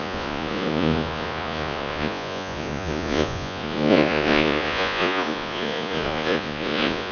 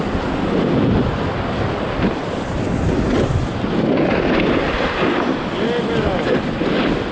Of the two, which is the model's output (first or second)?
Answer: first